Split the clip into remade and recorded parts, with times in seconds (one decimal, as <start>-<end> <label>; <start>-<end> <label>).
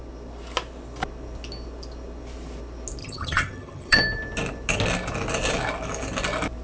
0.0-3.0 recorded; 3.0-4.0 remade; 4.0-6.6 recorded